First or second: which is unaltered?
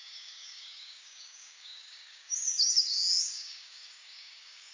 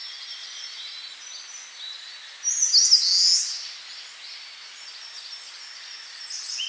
second